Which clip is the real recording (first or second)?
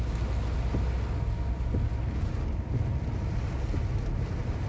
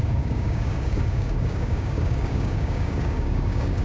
first